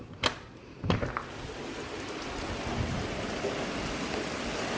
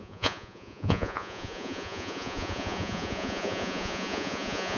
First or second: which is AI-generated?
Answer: second